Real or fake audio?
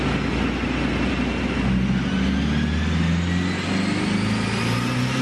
real